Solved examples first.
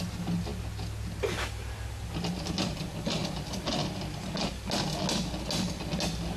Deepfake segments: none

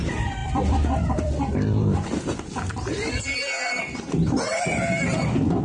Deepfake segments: 0.4-3.8 (vocoder, BigVGAN v2)

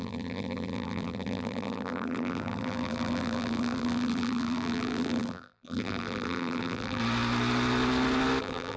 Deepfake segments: 0.0-7.0 (vocoder, BigVGAN v2); 8.4-8.8

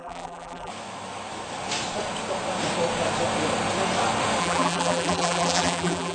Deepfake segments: 0.0-0.7 (vocoder, BigVGAN v2); 4.4-6.1

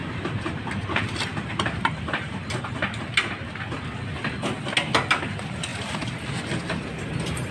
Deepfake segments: 0.0-2.7 (vocoder, BigVGAN v2); 5.7-6.3

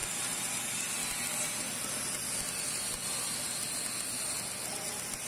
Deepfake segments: none

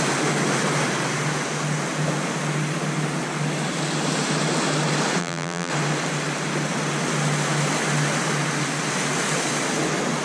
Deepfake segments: 5.2-5.7 (vocoder, BigVGAN v2)